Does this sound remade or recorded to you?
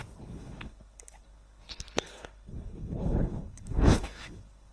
remade